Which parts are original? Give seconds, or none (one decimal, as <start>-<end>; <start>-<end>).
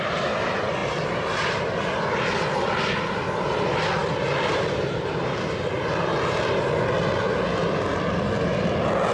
0.0-9.1